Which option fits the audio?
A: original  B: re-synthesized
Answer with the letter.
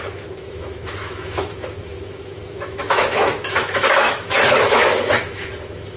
B